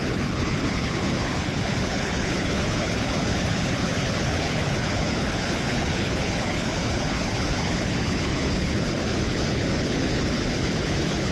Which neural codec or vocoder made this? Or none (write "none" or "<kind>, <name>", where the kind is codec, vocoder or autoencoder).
codec, HILCodec